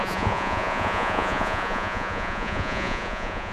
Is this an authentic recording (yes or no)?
no